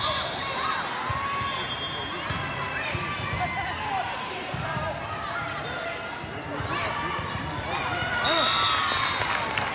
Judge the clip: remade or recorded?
recorded